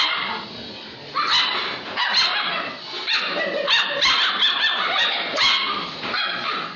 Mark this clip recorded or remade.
recorded